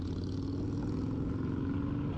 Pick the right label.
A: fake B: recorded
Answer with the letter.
B